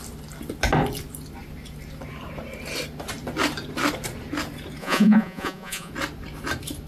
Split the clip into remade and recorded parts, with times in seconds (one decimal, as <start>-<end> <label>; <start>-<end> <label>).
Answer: 0.0-4.8 recorded; 4.8-5.9 remade; 5.9-6.9 recorded